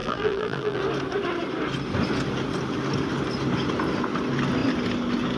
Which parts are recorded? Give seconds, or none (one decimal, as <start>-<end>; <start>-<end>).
0.8-5.4